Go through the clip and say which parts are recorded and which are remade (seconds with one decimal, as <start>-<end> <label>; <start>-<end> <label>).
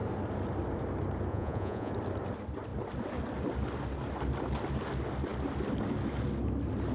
0.0-1.3 recorded; 1.3-1.9 remade; 1.9-6.9 recorded